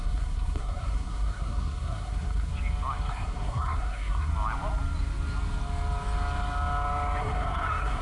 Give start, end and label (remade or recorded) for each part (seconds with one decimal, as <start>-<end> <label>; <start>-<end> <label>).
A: 0.0-2.5 remade; 2.5-3.1 recorded; 3.1-4.3 remade; 4.3-7.2 recorded; 7.2-8.0 remade